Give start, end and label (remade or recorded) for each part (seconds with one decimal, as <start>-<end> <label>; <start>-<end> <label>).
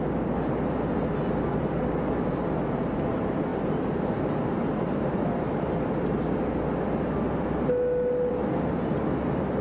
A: 0.0-9.6 recorded